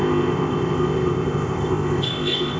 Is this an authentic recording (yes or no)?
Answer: no